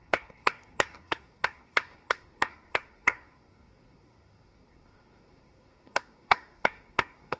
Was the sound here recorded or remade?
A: remade